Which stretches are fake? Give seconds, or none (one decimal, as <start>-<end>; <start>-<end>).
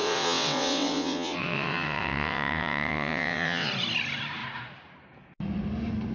0.0-3.7